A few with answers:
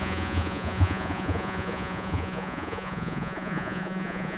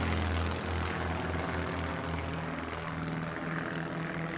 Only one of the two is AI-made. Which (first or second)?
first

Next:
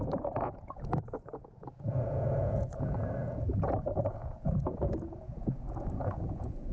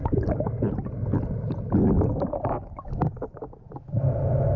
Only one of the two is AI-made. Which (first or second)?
first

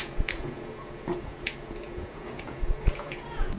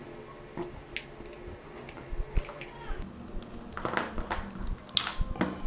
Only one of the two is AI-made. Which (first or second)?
first